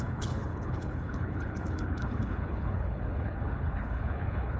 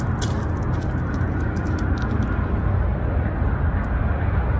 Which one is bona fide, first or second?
second